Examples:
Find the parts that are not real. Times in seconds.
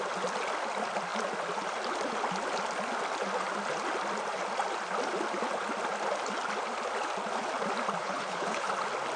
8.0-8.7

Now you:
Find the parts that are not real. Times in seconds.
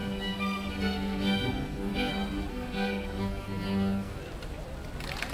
0.0-2.1; 2.5-4.2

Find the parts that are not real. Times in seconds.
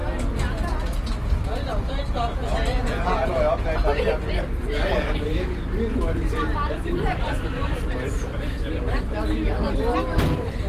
2.7-3.4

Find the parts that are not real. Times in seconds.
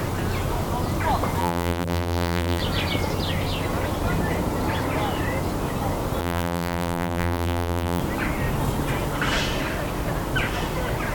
1.4-2.6; 6.2-8.0